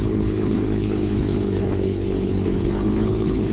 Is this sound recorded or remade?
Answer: remade